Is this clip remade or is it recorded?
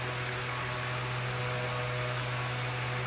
recorded